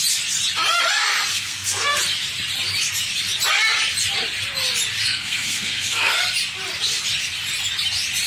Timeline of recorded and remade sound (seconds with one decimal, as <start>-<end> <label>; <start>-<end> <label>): 0.0-1.3 recorded; 1.3-2.0 remade; 2.0-5.0 recorded; 5.0-6.2 remade; 6.2-8.3 recorded